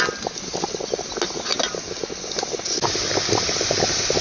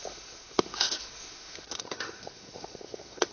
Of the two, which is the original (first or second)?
first